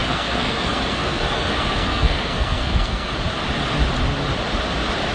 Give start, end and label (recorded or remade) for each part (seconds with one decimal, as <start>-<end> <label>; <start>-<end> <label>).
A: 0.0-3.1 remade; 3.1-5.1 recorded